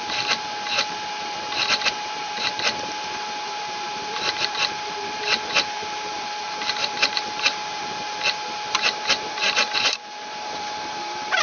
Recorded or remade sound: remade